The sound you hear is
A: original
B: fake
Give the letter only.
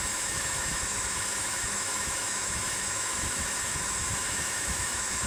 B